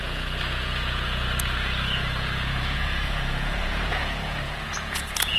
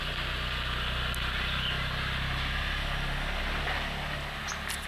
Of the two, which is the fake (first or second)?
first